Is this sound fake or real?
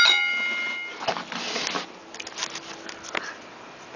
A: real